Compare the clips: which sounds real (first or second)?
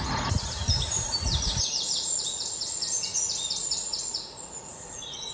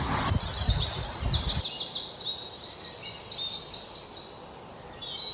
second